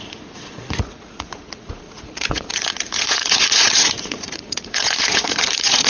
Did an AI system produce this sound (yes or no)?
yes